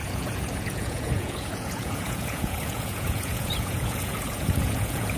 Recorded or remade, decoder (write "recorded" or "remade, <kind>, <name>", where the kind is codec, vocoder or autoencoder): remade, vocoder, Vocos